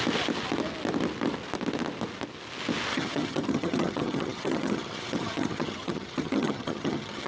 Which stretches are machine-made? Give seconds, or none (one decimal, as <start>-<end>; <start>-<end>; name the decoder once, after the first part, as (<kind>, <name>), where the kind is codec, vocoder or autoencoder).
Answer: 2.9-7.3 (vocoder, HiFi-GAN)